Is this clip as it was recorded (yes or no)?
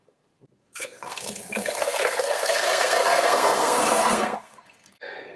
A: no